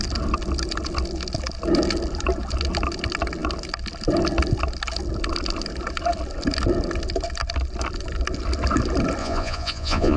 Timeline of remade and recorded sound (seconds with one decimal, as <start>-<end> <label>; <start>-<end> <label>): 0.0-9.2 recorded; 9.2-10.2 remade